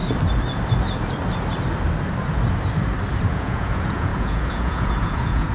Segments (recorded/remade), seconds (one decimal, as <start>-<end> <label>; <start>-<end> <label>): 0.0-3.3 recorded; 3.3-5.5 remade